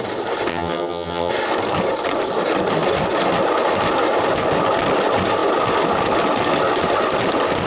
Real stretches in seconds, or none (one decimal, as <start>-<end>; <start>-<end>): 0.0-0.5; 1.3-7.7